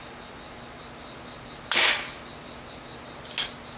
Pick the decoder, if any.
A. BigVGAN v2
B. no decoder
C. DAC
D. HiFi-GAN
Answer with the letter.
B